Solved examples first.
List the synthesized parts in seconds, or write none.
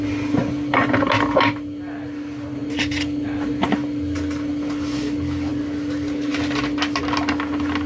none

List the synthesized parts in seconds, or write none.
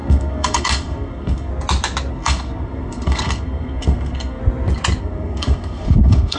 0.0-1.5 (codec, SNAC); 2.1-4.4; 5.0-6.4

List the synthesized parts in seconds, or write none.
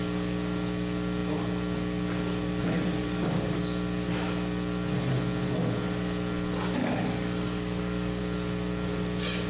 3.0-3.6 (codec, DAC); 6.8-8.2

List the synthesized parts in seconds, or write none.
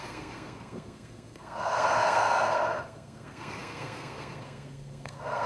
0.0-5.5 (codec, SNAC)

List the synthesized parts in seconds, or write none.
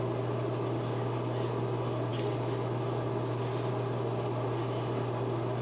none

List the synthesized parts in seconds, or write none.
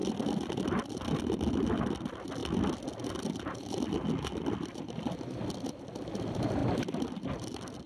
none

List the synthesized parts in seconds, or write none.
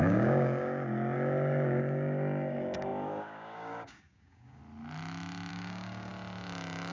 0.0-4.6 (codec, DAC); 5.5-6.1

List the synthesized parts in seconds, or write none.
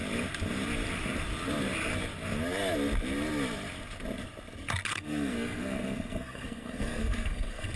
4.9-7.8 (codec, SNAC)